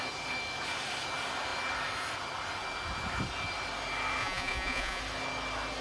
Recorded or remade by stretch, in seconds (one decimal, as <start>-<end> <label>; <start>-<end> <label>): 0.0-4.2 recorded; 4.2-5.0 remade; 5.0-5.8 recorded